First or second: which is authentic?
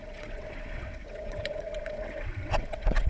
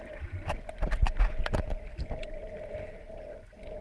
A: second